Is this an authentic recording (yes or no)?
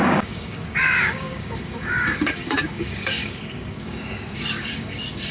no